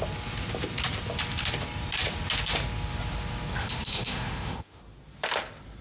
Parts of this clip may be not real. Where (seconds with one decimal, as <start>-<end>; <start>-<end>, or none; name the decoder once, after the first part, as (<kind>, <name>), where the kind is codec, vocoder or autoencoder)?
3.6-4.8 (autoencoder, DAC-VAE)